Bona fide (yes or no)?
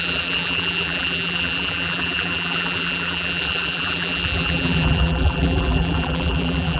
no